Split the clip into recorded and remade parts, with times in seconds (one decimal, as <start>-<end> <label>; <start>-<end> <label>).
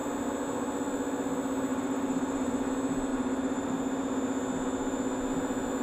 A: 0.0-1.7 recorded; 1.7-2.7 remade; 2.7-3.1 recorded; 3.1-3.7 remade; 3.7-5.8 recorded